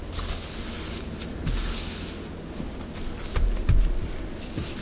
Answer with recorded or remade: recorded